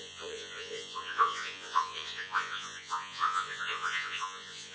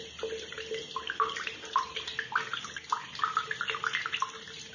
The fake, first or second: first